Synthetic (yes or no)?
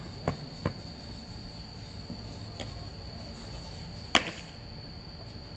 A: no